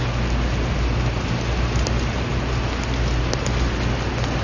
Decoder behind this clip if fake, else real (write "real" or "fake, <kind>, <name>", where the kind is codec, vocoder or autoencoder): real